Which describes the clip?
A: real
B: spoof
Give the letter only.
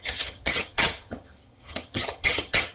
B